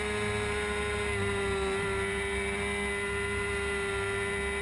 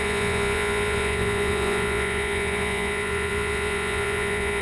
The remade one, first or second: second